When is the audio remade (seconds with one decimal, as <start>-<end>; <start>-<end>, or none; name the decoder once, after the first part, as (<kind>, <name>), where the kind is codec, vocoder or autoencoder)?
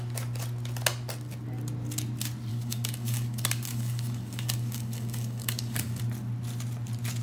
2.5-6.0 (codec, DAC)